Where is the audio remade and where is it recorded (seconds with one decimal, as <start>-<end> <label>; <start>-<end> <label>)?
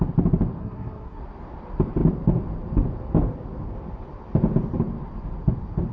0.0-0.6 recorded; 0.6-1.2 remade; 1.2-5.9 recorded